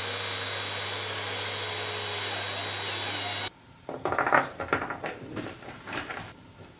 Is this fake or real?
real